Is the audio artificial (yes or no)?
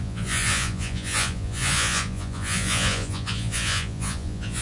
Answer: yes